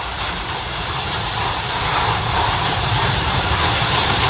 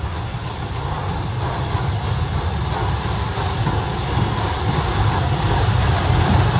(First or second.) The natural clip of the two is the second